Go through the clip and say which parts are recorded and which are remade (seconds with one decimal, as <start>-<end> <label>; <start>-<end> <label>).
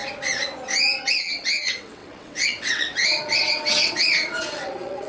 0.0-1.0 recorded; 1.0-5.1 remade